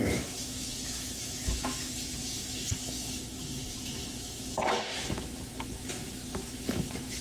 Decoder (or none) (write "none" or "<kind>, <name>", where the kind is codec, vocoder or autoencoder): autoencoder, DAC-VAE